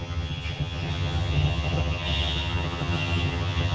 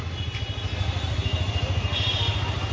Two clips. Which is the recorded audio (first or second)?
second